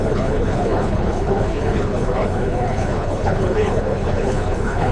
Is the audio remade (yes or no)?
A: yes